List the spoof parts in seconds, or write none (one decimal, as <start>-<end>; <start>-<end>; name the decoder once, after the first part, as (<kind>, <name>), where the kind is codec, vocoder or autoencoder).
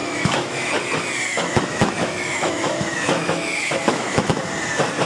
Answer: 0.0-0.7 (autoencoder, DAC-VAE); 1.3-4.4